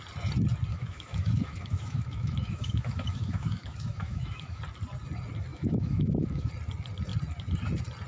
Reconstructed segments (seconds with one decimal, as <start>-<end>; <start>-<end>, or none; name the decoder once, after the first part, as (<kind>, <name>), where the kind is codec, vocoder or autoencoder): 0.7-4.6 (autoencoder, DAC-VAE); 5.5-6.5